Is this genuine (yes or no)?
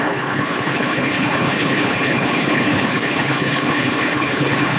no